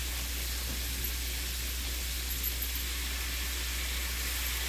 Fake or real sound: real